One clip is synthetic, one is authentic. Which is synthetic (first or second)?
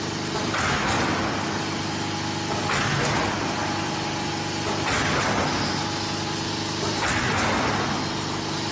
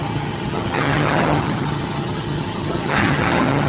second